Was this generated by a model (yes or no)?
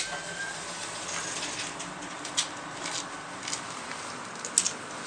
no